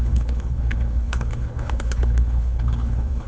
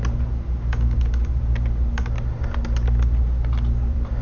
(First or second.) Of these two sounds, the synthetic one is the first